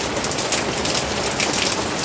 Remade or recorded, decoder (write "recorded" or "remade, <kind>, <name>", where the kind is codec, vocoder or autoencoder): recorded